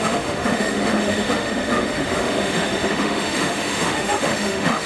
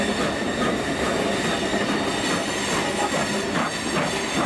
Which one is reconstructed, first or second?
first